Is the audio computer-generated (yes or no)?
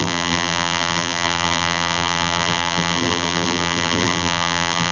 yes